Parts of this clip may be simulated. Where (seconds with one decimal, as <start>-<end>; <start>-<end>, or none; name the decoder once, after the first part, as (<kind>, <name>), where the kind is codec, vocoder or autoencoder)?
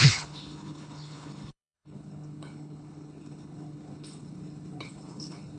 0.0-5.6 (codec, HILCodec)